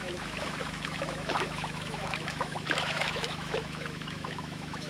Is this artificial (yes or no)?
yes